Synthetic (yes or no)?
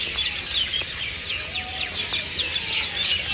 no